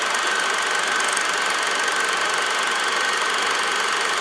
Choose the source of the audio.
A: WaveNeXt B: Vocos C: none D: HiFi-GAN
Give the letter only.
C